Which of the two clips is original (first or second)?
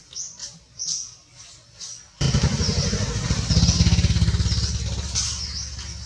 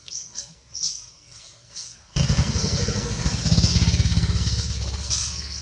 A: first